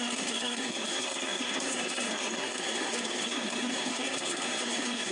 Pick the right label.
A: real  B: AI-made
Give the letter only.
B